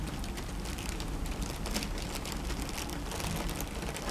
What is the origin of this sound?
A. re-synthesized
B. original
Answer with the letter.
A